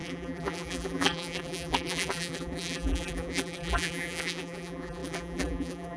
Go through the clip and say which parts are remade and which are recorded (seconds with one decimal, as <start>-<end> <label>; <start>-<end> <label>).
0.0-6.0 remade